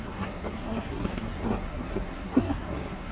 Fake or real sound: fake